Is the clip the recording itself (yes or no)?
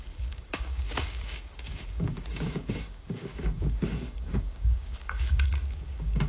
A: no